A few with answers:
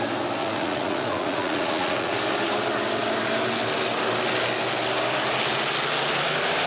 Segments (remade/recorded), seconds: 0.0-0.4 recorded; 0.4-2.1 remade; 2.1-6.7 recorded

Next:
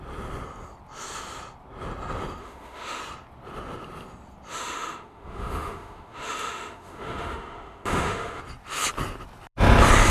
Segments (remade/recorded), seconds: 0.0-2.4 recorded; 2.4-3.0 remade; 3.0-4.5 recorded; 4.5-8.4 remade; 8.4-10.1 recorded

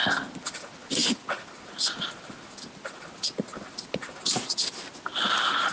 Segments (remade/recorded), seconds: 0.0-5.7 recorded

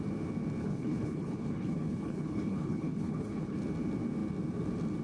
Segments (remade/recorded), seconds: 0.0-0.6 recorded; 0.6-3.6 remade; 3.6-5.0 recorded

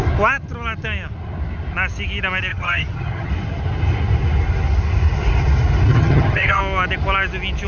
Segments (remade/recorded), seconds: 0.0-2.5 recorded; 2.5-3.3 remade; 3.3-5.9 recorded; 5.9-6.6 remade; 6.6-7.7 recorded

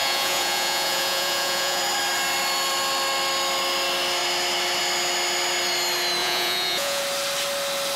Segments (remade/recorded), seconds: 0.0-1.8 remade; 1.8-6.2 recorded; 6.2-7.0 remade; 7.0-8.0 recorded

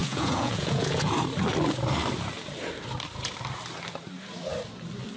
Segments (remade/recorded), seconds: 0.0-1.1 remade; 1.1-5.2 recorded

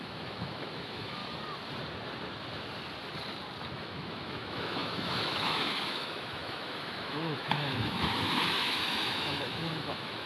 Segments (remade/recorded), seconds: 0.0-1.2 remade; 1.2-3.7 recorded; 3.7-10.3 remade